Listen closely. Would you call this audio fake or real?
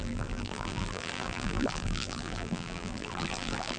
fake